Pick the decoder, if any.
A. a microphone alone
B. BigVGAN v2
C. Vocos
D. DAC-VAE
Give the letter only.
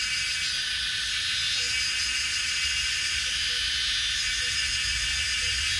A